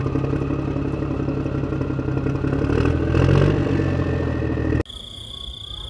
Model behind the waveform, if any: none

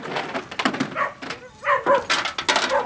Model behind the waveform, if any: none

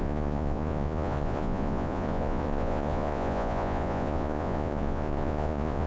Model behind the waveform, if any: vocoder, Vocos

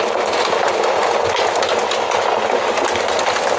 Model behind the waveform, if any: none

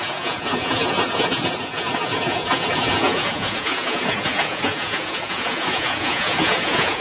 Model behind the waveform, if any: vocoder, Vocos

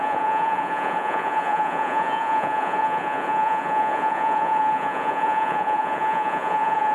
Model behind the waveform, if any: vocoder, Vocos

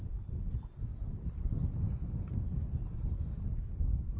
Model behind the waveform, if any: none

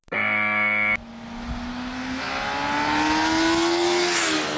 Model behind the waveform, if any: none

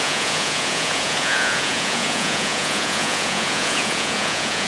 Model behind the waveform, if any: vocoder, Vocos